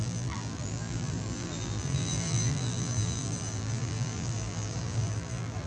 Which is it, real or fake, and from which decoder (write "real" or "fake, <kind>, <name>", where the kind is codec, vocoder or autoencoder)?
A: fake, vocoder, BigVGAN v2